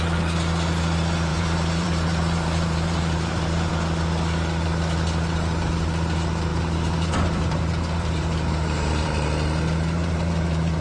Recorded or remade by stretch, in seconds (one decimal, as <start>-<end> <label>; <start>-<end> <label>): 0.0-1.3 recorded; 1.3-3.7 remade; 3.7-6.5 recorded; 6.5-10.8 remade